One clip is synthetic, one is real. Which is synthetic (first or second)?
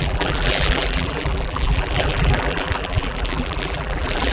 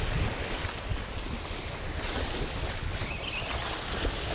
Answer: first